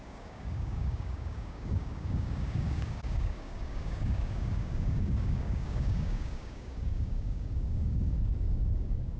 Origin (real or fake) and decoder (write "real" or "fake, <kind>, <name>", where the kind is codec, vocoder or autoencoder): fake, codec, DAC